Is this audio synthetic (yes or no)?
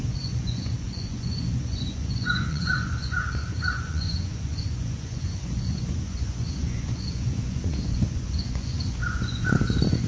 yes